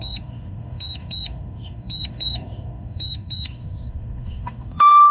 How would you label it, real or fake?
fake